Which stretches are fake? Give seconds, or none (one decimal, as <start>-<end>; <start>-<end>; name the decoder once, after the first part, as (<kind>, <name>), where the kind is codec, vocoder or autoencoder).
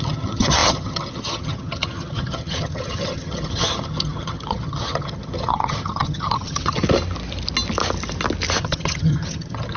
0.0-6.8 (vocoder, HiFi-GAN); 8.6-9.8